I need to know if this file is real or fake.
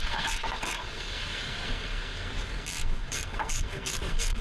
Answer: fake